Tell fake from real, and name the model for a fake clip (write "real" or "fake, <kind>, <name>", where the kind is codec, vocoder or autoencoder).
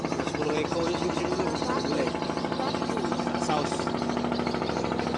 real